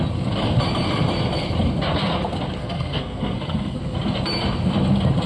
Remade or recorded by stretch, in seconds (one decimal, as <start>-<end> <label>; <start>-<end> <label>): 0.0-2.6 recorded; 2.6-3.8 remade; 3.8-5.3 recorded